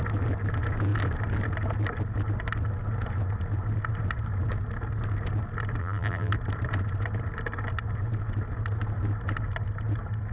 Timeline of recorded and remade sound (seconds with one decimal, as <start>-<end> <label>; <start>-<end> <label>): 0.0-5.8 recorded; 5.8-6.3 remade; 6.3-10.3 recorded